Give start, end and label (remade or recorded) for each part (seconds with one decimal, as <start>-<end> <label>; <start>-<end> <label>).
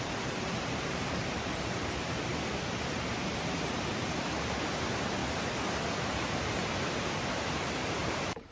0.0-2.3 remade; 2.3-3.1 recorded; 3.1-5.2 remade; 5.2-6.1 recorded; 6.1-8.5 remade